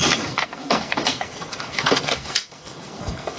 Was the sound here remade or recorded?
remade